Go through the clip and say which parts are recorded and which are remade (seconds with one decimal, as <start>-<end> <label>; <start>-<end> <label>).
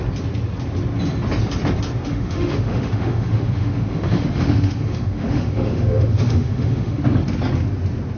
0.0-2.1 recorded; 2.1-7.0 remade; 7.0-8.2 recorded